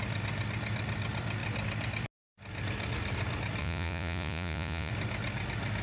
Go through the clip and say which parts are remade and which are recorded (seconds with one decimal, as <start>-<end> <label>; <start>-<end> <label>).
0.0-3.6 recorded; 3.6-4.9 remade; 4.9-5.8 recorded